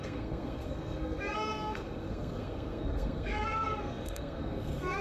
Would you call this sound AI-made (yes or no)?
yes